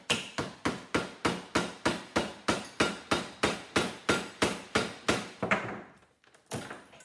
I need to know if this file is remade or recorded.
recorded